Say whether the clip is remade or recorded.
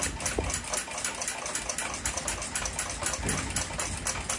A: recorded